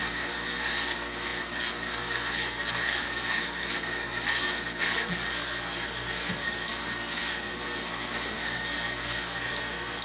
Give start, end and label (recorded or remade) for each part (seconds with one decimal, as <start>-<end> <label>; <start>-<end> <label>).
0.0-10.0 remade